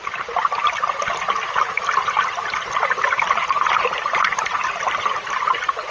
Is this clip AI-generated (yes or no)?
no